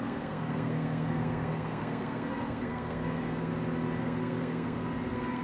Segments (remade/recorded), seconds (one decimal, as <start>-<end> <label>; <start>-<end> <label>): 0.0-3.5 remade; 3.5-4.0 recorded; 4.0-5.4 remade